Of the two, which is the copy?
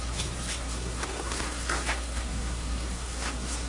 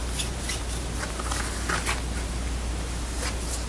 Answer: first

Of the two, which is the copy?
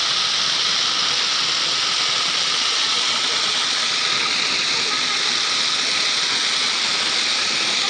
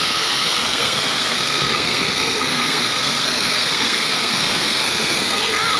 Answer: second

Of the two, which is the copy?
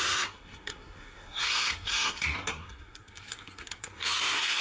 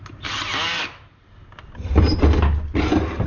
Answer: first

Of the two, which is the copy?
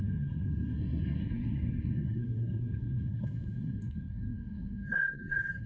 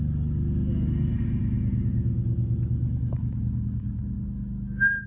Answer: first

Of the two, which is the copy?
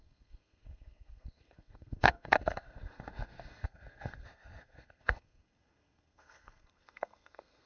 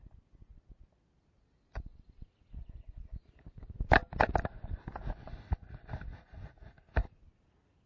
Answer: first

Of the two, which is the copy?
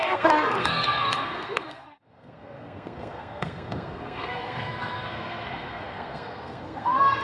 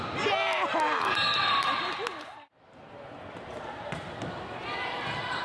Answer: first